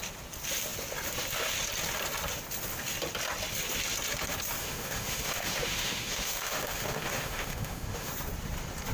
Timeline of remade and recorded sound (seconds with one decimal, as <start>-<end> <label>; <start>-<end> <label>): 0.0-4.6 recorded; 4.6-8.1 remade; 8.1-8.9 recorded